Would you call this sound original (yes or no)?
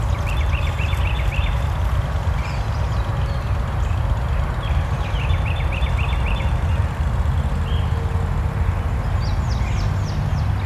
yes